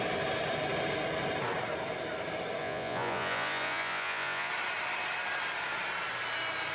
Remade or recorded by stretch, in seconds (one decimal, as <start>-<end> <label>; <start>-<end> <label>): 0.0-2.6 recorded; 2.6-4.5 remade; 4.5-6.7 recorded

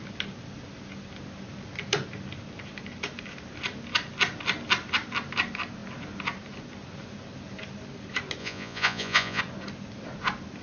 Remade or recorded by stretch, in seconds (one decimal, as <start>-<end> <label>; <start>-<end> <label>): 0.0-8.4 recorded; 8.4-9.4 remade; 9.4-10.6 recorded

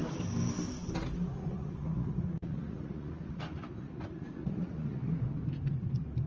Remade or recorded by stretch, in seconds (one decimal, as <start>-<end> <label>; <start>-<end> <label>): 0.0-1.3 recorded; 1.3-5.1 remade; 5.1-6.3 recorded

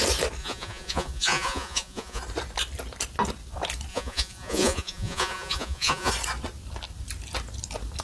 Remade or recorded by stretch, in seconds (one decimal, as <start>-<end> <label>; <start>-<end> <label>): 0.0-0.4 recorded; 0.4-2.2 remade; 2.2-3.9 recorded; 3.9-6.1 remade; 6.1-8.0 recorded

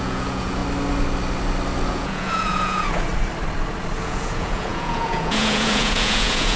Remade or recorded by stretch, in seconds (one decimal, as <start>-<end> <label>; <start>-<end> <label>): 0.0-0.6 remade; 0.6-1.9 recorded; 1.9-3.1 remade; 3.1-4.0 recorded; 4.0-6.6 remade

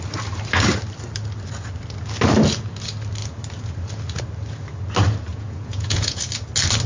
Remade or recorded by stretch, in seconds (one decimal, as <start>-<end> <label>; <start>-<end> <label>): 0.0-5.3 recorded; 5.3-6.2 remade; 6.2-6.9 recorded

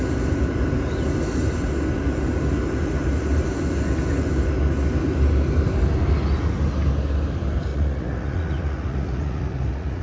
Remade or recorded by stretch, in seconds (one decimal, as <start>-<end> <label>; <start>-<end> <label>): 0.0-7.7 recorded; 7.7-10.0 remade

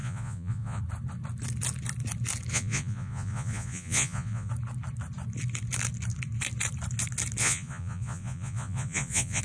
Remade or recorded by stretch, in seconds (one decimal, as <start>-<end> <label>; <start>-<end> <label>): 0.0-0.8 remade; 0.8-2.5 recorded; 2.5-4.5 remade; 4.5-7.4 recorded; 7.4-9.4 remade